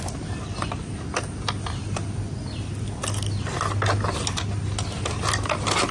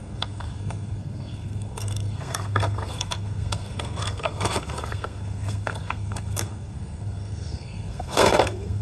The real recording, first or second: first